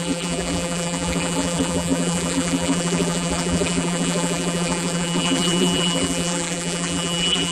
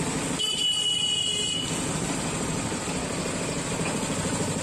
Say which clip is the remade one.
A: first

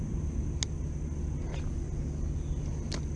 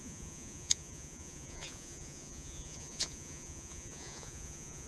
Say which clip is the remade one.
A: second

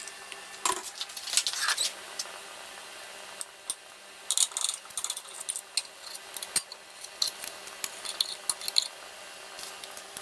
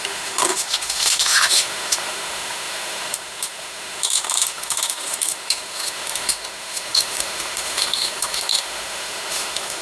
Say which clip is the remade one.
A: second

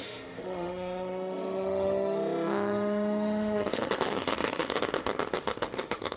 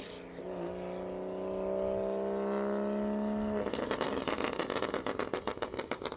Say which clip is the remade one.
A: first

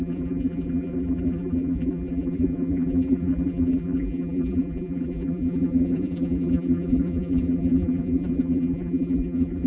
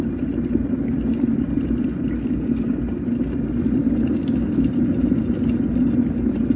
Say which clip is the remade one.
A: first